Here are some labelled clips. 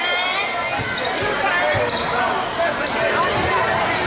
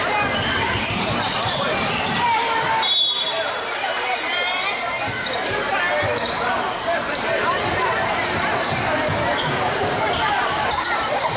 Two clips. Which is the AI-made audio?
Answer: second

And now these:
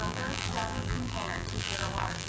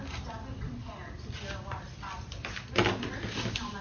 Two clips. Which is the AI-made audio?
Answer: first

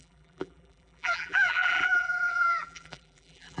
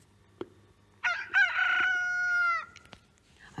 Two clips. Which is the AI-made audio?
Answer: first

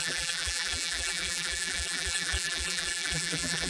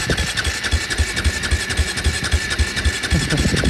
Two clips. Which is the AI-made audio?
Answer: first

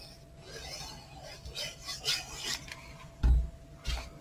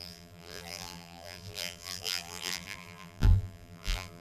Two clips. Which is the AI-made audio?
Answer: second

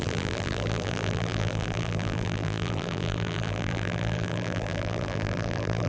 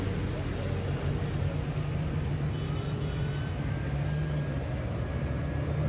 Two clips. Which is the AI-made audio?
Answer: first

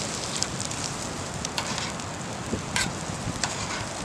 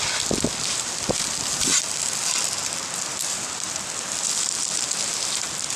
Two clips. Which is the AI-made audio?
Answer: first